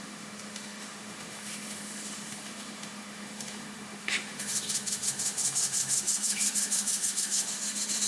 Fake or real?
fake